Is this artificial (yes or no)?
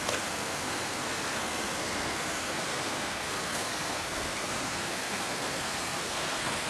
yes